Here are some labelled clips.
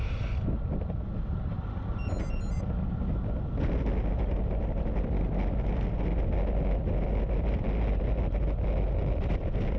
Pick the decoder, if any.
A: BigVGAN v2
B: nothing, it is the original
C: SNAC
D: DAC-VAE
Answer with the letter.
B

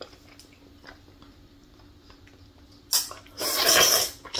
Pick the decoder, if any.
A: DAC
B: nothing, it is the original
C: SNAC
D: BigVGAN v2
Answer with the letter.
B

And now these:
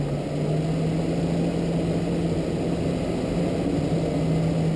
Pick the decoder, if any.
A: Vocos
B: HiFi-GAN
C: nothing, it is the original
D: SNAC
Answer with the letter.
C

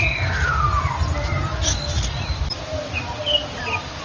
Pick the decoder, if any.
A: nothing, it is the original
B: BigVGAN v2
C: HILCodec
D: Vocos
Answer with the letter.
A